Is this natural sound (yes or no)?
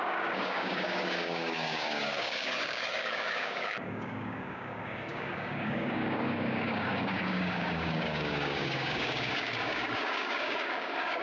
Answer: no